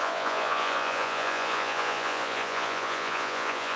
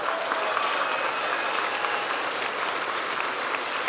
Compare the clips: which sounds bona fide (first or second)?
second